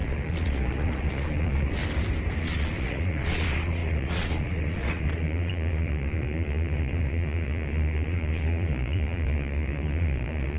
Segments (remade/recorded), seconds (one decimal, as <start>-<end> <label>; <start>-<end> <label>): 0.0-1.8 remade; 1.8-2.4 recorded; 2.4-10.6 remade